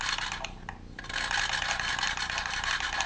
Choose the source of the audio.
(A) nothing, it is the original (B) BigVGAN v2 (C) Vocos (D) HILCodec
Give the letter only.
A